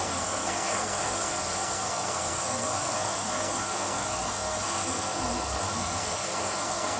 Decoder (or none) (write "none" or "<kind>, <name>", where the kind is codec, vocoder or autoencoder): codec, SNAC